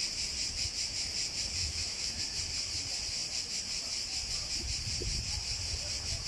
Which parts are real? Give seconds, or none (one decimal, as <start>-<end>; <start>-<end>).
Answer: 0.0-1.6; 2.2-6.3